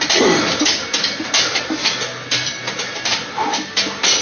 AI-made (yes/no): no